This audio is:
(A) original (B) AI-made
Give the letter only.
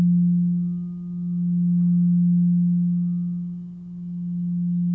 A